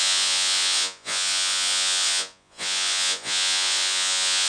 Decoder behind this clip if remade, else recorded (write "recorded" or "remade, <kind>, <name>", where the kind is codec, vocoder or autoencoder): remade, vocoder, Vocos